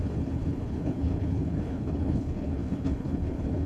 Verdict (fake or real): fake